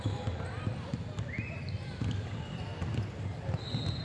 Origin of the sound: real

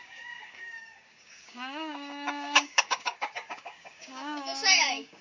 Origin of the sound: fake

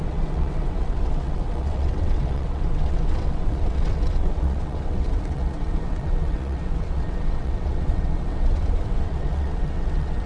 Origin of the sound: fake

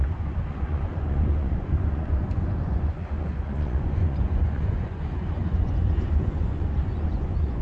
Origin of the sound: fake